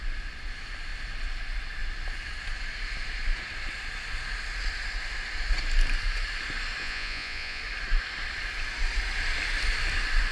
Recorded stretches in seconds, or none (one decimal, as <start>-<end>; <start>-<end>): 0.0-6.8; 7.6-10.3

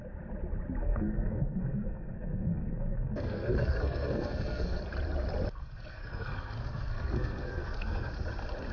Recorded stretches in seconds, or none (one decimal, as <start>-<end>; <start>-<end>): 0.0-0.8; 4.8-5.6; 8.1-8.7

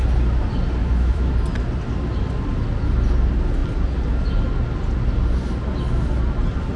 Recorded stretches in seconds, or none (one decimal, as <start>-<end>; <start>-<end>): 0.0-0.8; 1.3-6.8

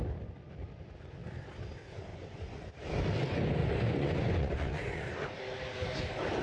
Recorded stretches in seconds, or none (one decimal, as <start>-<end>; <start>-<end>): 0.0-2.1; 2.7-3.6; 5.1-6.4